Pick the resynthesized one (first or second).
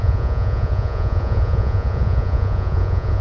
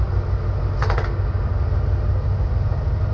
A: first